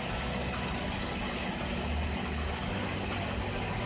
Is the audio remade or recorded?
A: recorded